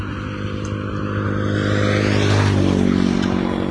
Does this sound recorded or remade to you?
recorded